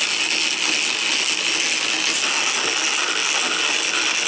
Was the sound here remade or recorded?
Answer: recorded